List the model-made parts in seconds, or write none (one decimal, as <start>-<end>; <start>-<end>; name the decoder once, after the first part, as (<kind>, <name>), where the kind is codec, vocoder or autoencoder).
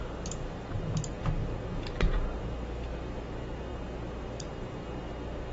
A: none